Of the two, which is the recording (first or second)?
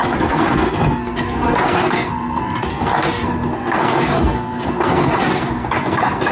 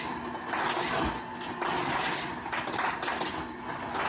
second